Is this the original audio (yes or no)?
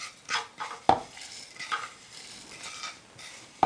yes